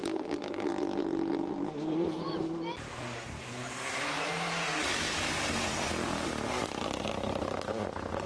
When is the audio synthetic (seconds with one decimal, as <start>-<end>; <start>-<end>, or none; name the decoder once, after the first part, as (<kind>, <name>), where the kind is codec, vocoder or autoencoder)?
0.0-0.7 (codec, DAC); 6.0-6.8